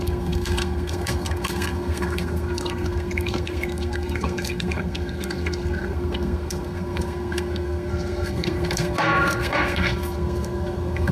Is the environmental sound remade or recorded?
remade